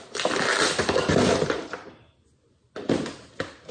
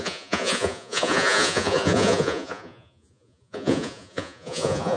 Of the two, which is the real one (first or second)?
first